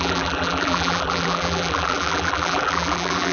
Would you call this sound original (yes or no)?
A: no